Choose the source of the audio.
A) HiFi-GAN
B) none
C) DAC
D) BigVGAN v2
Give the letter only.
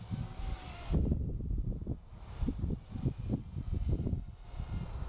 B